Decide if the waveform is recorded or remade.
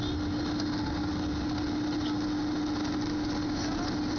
recorded